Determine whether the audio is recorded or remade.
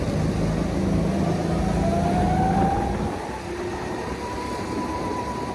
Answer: recorded